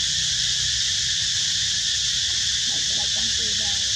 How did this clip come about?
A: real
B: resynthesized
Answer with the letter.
A